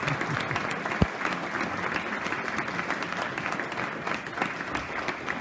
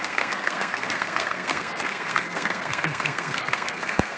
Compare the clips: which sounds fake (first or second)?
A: second